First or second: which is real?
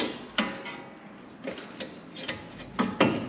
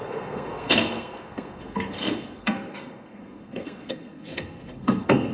first